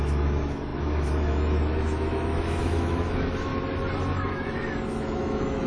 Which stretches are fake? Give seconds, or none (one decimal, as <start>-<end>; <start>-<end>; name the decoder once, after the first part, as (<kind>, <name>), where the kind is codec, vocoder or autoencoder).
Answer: 0.0-3.5 (autoencoder, DAC-VAE); 4.1-5.7